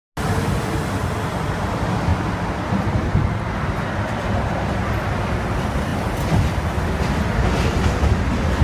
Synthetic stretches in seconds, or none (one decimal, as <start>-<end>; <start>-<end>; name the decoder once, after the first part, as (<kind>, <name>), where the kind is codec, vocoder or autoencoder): none